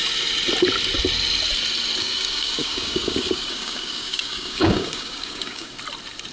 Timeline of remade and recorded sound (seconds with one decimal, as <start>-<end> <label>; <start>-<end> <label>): 0.0-2.0 recorded; 2.0-5.8 remade; 5.8-6.3 recorded